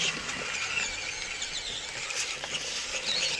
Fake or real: real